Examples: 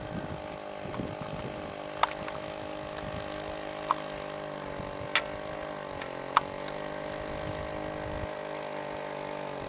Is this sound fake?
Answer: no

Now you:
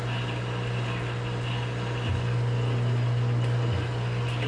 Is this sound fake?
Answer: no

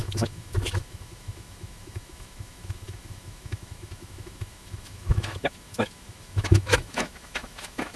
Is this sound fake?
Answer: yes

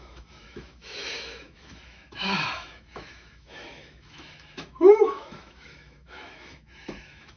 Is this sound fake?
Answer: yes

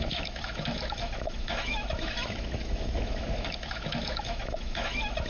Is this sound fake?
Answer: yes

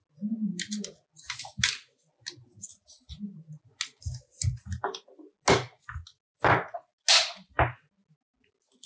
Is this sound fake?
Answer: no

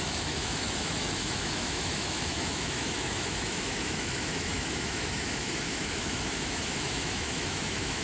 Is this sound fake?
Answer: yes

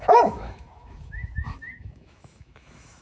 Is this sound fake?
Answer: yes